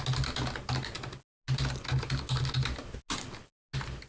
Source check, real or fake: real